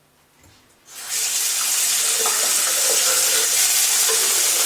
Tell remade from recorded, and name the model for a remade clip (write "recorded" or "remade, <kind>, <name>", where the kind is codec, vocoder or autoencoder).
recorded